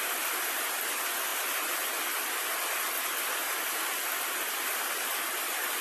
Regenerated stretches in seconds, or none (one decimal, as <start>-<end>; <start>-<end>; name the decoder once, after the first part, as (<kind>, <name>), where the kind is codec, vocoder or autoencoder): none